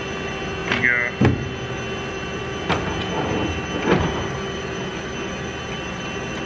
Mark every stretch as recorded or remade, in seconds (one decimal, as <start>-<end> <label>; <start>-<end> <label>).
0.0-6.5 recorded